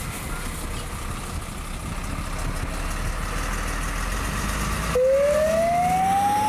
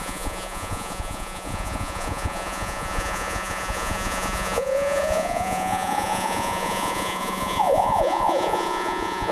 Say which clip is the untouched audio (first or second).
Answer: first